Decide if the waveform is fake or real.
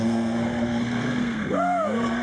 fake